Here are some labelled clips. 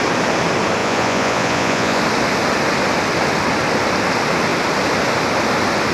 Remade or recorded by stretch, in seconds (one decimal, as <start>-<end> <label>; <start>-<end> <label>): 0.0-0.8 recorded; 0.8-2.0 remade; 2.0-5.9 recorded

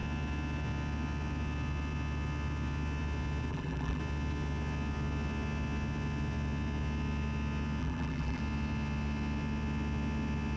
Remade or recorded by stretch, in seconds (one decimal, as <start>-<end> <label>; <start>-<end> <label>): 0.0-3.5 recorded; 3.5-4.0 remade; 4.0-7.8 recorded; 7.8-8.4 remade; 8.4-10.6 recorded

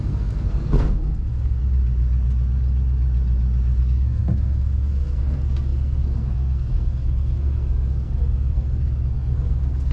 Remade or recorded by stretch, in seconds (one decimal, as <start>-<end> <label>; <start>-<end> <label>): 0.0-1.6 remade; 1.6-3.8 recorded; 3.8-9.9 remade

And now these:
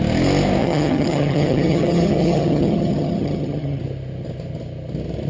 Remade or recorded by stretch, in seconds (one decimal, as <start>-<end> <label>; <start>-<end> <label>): 0.0-0.6 recorded; 0.6-3.8 remade; 3.8-5.3 recorded

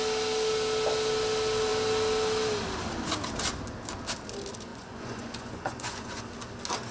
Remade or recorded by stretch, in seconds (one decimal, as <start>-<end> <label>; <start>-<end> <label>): 0.0-4.7 recorded; 4.7-6.2 remade; 6.2-6.9 recorded